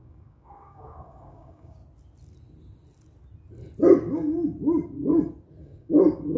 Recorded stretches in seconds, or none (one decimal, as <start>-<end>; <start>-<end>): 1.8-5.6